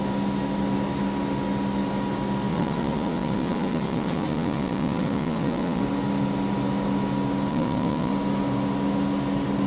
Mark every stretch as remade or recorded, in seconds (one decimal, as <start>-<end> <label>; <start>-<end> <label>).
0.0-2.5 recorded; 2.5-5.8 remade; 5.8-7.5 recorded; 7.5-8.1 remade; 8.1-9.7 recorded